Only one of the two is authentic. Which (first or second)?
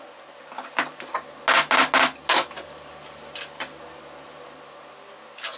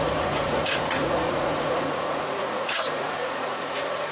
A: first